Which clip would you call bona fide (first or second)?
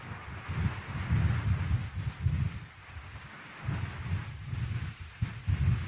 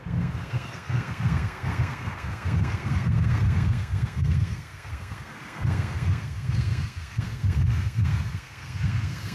first